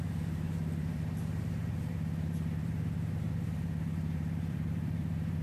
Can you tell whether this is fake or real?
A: fake